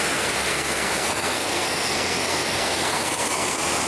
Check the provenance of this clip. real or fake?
fake